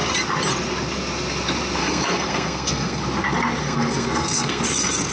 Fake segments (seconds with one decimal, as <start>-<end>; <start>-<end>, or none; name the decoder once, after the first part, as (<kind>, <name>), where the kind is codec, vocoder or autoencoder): 1.8-3.0 (codec, SNAC); 3.6-4.6